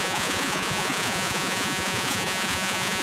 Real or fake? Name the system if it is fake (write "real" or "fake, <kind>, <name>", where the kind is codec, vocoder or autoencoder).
fake, vocoder, Vocos